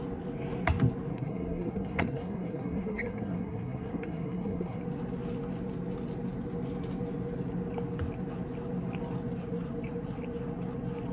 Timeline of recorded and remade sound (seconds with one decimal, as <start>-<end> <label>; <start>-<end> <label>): 0.0-1.1 recorded; 1.1-4.8 remade; 4.8-11.1 recorded